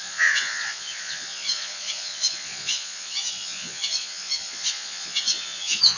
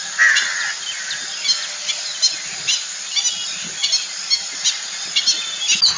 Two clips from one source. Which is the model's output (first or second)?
first